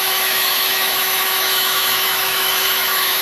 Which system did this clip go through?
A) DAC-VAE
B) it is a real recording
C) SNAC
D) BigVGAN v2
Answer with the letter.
A